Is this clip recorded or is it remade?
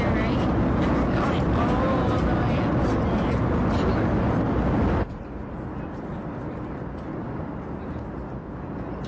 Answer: recorded